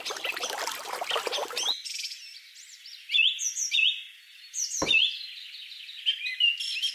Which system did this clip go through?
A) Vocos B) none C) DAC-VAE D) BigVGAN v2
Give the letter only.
B